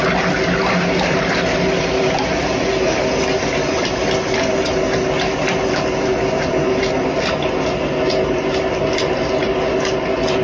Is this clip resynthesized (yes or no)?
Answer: no